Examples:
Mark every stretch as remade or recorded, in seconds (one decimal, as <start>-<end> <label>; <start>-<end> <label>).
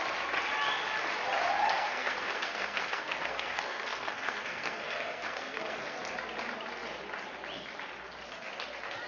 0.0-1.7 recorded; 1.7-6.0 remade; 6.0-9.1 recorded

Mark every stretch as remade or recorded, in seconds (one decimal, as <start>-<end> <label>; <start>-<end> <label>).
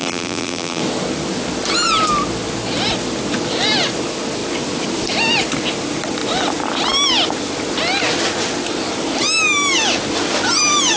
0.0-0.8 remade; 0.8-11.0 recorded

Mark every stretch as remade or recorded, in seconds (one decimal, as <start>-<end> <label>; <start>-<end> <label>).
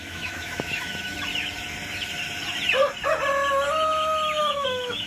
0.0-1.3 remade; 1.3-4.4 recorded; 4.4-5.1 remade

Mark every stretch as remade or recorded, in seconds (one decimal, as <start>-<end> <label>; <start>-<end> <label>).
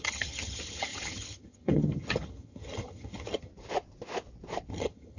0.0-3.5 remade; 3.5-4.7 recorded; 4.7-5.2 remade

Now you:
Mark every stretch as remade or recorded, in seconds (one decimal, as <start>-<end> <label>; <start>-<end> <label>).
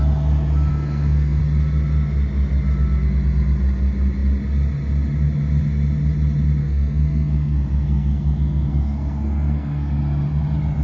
0.0-0.7 recorded; 0.7-1.4 remade; 1.4-6.6 recorded; 6.6-10.0 remade; 10.0-10.8 recorded